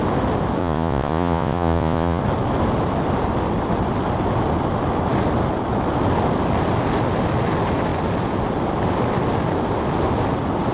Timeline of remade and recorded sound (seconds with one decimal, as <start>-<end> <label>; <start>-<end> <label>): 0.0-0.6 recorded; 0.6-2.2 remade; 2.2-10.7 recorded